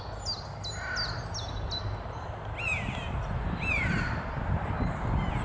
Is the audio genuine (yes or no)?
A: yes